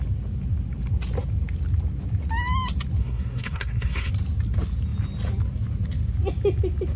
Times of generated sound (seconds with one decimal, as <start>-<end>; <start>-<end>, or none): 3.0-4.1